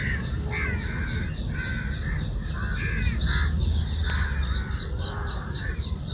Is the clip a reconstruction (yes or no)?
no